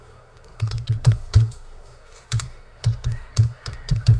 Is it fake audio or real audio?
fake